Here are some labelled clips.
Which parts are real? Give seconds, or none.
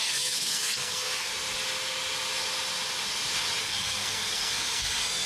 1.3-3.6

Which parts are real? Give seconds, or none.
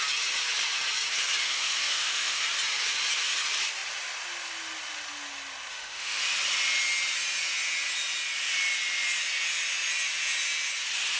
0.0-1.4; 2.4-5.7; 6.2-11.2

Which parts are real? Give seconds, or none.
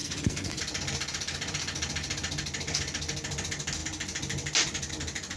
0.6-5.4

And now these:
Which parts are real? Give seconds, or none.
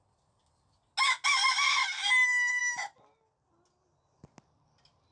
0.0-5.1